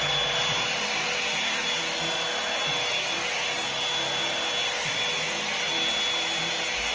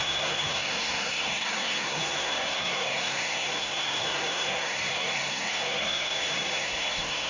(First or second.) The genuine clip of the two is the first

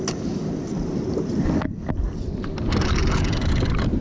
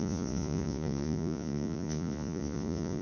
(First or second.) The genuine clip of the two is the first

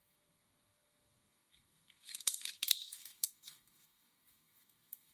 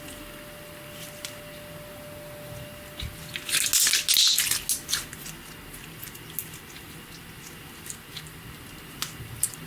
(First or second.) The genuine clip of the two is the second